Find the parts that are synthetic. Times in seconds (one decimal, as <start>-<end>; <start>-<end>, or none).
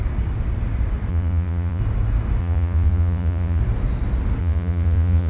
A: 1.1-1.8; 2.4-3.6; 4.4-5.3